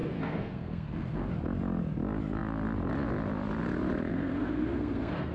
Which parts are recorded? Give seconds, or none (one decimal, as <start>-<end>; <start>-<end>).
1.3-4.1